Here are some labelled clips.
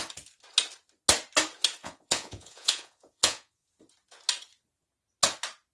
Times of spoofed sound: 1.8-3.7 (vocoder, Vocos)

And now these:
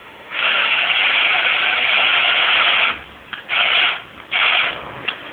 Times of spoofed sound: 0.0-0.8 (autoencoder, DAC-VAE)

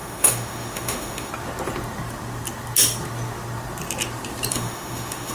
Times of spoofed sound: 0.0-1.3 (autoencoder, DAC-VAE); 4.5-5.3

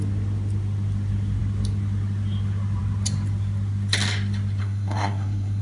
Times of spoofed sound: 4.6-5.6 (codec, SNAC)

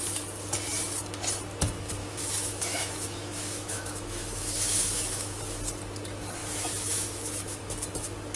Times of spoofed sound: 2.0-5.4 (autoencoder, DAC-VAE); 6.4-7.6

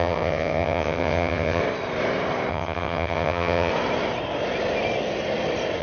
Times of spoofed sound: 0.0-1.6 (vocoder, HiFi-GAN); 2.5-3.7

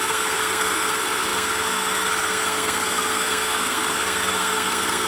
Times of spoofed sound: 0.0-5.1 (codec, SNAC)

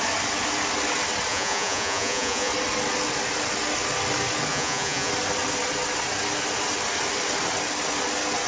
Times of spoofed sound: 1.3-2.5 (vocoder, Vocos); 4.5-5.1